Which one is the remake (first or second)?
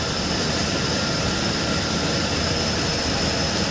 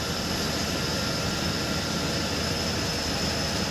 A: first